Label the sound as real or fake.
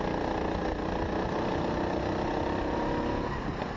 real